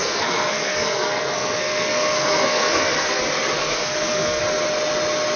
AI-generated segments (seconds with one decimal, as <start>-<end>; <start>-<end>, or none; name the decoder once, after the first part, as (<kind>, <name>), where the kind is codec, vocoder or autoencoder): 0.0-3.2 (codec, SNAC); 3.6-4.4